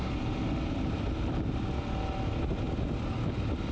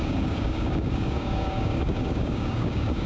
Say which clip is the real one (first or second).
first